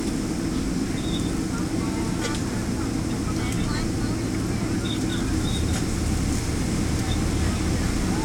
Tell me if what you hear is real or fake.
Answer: real